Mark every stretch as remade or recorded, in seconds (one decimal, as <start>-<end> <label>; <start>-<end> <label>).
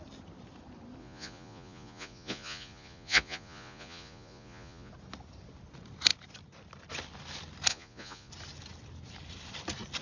0.0-1.0 recorded; 1.0-4.9 remade; 4.9-7.7 recorded; 7.7-8.3 remade; 8.3-10.0 recorded